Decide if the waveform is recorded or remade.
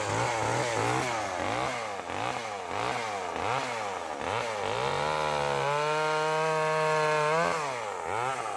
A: recorded